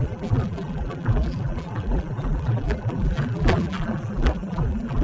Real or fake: fake